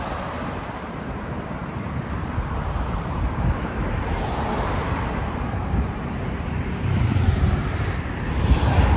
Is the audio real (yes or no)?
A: no